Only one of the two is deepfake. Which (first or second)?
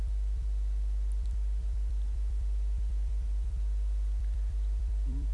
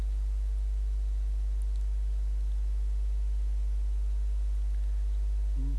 first